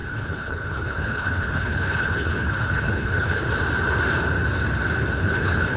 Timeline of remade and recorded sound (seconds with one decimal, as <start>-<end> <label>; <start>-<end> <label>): 0.0-3.5 remade; 3.5-5.2 recorded; 5.2-5.8 remade